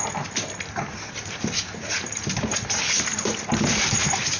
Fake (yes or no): no